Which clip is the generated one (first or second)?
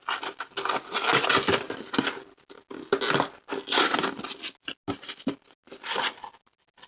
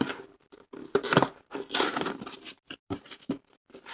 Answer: second